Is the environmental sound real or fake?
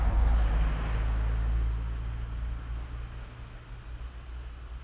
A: real